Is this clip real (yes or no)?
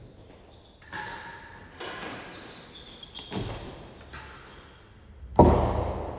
yes